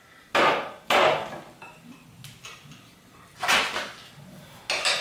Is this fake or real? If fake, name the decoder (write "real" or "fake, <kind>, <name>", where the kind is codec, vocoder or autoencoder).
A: real